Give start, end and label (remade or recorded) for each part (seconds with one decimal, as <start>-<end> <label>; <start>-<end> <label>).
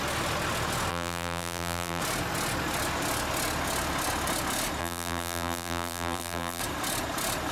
0.0-0.9 recorded; 0.9-2.0 remade; 2.0-4.8 recorded; 4.8-6.6 remade; 6.6-7.5 recorded